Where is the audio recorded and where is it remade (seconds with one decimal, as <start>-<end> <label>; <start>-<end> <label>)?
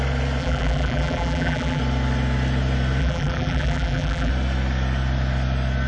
0.0-0.4 recorded; 0.4-1.8 remade; 1.8-3.0 recorded; 3.0-4.3 remade; 4.3-5.9 recorded